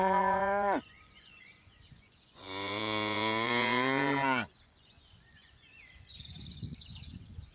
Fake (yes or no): yes